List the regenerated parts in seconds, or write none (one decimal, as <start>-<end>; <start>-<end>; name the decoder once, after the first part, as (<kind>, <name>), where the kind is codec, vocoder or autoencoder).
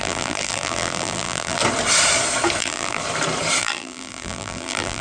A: 0.0-1.6 (vocoder, BigVGAN v2); 2.6-3.0; 3.6-5.0